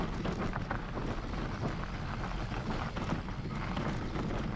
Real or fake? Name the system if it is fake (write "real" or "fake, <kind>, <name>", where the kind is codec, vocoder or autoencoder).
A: real